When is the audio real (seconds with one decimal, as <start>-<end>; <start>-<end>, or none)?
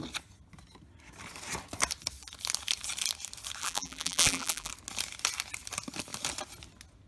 0.0-3.6; 4.7-7.1